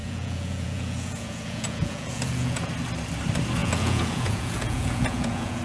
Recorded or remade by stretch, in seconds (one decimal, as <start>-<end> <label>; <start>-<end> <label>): 0.0-2.7 remade; 2.7-3.6 recorded; 3.6-5.6 remade